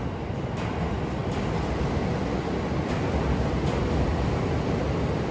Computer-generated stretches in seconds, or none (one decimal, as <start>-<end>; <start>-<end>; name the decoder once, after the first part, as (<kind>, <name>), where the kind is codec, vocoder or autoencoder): none